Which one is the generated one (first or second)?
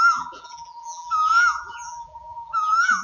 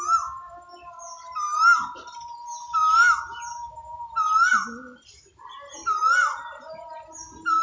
first